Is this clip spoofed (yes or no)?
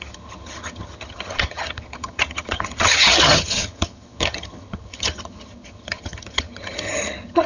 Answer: yes